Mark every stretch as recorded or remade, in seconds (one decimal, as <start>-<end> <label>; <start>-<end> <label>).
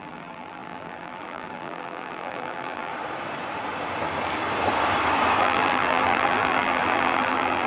0.0-2.9 remade; 2.9-5.4 recorded; 5.4-7.7 remade